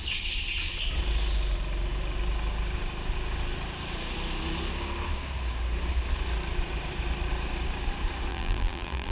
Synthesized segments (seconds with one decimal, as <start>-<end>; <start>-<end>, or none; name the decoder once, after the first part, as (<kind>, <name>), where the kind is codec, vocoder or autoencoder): 8.3-9.1 (vocoder, BigVGAN v2)